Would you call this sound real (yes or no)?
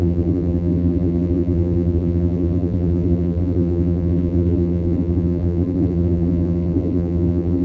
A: no